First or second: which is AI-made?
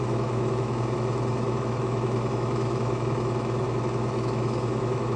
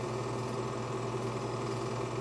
first